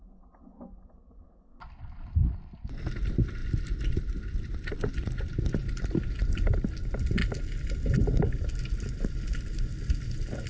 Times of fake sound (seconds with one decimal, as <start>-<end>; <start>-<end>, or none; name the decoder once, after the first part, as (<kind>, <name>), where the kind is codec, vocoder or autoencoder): none